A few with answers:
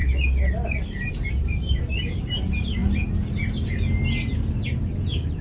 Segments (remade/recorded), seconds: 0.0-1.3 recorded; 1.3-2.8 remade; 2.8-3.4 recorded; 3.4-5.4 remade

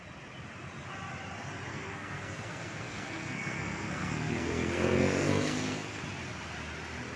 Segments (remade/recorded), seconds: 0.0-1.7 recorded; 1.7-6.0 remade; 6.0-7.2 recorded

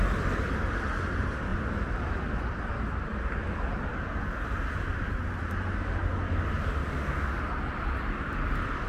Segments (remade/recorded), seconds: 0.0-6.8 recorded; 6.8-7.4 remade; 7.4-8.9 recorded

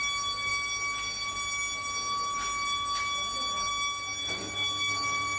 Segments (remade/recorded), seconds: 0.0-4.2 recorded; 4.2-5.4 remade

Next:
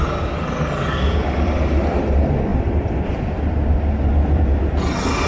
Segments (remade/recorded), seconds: 0.0-2.5 recorded; 2.5-3.5 remade; 3.5-5.3 recorded